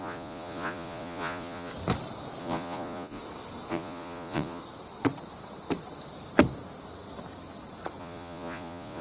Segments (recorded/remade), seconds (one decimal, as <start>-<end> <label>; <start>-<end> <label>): 0.0-1.7 remade; 1.7-2.4 recorded; 2.4-3.2 remade; 3.2-3.7 recorded; 3.7-4.6 remade; 4.6-8.0 recorded; 8.0-9.0 remade